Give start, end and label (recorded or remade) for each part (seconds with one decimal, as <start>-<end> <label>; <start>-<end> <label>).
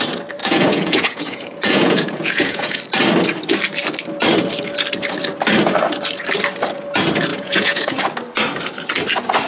0.0-0.4 recorded; 0.4-2.8 remade; 2.8-7.3 recorded; 7.3-8.0 remade; 8.0-9.5 recorded